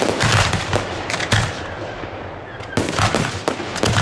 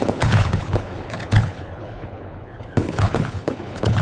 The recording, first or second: first